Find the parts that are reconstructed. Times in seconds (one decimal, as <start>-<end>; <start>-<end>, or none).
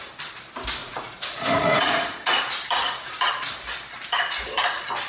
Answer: 0.8-2.5